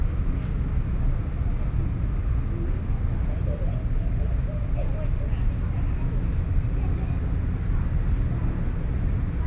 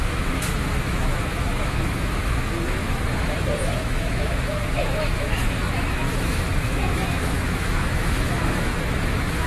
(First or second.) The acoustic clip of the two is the first